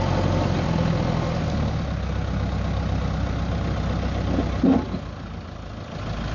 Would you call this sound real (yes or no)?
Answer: yes